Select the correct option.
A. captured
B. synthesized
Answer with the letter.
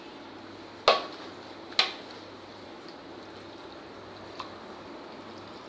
A